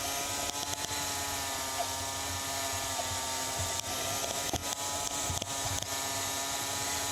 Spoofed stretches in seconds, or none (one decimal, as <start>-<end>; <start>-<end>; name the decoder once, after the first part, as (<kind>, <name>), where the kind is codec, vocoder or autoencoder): none

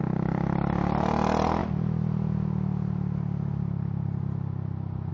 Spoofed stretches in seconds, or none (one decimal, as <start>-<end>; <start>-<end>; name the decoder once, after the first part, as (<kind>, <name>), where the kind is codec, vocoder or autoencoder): none

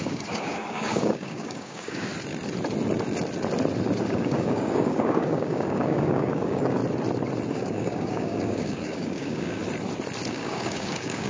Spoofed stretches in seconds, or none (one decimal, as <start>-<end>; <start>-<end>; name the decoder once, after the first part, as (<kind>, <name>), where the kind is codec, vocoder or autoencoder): 0.0-2.1 (codec, DAC); 4.0-6.8; 7.5-9.6; 10.3-11.3

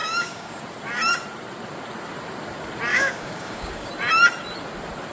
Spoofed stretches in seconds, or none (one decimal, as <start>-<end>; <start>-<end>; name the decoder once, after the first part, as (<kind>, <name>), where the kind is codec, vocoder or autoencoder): 0.0-0.6 (codec, DAC); 2.9-3.9

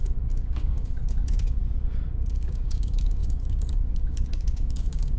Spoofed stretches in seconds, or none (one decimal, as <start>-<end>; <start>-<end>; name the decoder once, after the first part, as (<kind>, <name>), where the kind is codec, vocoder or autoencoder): 0.0-1.6 (codec, DAC); 2.3-5.2

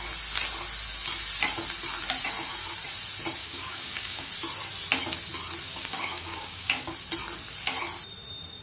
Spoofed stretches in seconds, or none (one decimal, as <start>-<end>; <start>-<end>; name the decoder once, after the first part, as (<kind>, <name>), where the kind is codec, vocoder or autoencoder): 3.4-4.3 (codec, DAC); 5.7-6.9

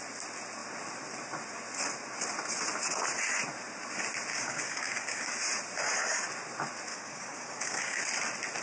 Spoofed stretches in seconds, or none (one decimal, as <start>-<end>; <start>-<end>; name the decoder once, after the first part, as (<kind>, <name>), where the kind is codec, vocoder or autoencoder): 4.3-5.3 (codec, DAC); 6.9-8.0